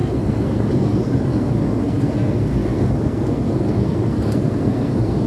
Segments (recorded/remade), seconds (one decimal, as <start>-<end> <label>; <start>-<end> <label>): 0.0-5.3 remade